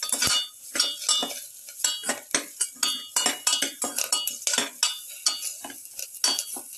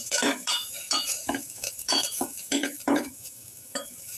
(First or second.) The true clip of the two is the first